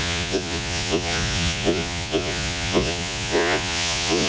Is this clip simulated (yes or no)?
yes